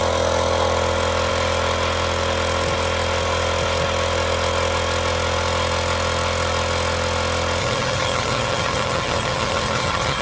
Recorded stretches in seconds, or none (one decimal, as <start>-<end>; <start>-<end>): 0.0-7.6